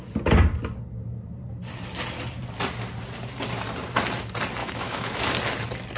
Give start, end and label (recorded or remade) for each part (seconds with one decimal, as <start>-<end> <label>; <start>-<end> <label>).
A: 0.0-4.6 recorded; 4.6-5.2 remade; 5.2-6.0 recorded